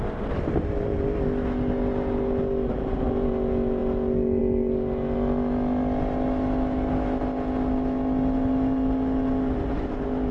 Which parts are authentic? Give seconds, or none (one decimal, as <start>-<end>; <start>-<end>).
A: 0.0-10.3